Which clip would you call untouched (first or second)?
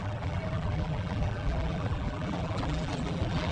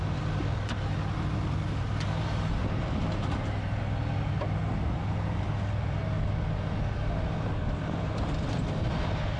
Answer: second